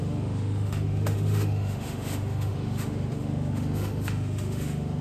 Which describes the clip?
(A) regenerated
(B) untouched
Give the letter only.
A